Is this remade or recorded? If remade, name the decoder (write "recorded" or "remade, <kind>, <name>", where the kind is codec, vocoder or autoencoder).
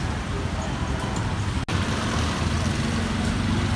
recorded